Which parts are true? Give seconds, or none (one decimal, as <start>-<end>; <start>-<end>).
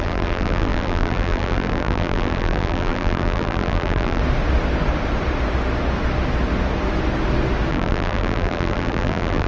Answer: 4.2-7.7